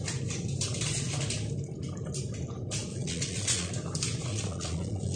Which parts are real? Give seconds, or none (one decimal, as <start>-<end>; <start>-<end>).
0.0-2.9; 3.7-4.3